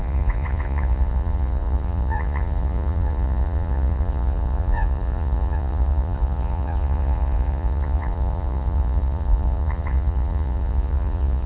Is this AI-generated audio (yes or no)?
yes